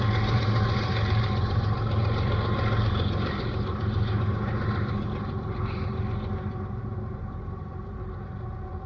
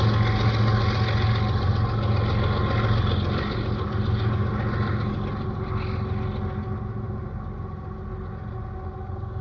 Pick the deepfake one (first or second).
first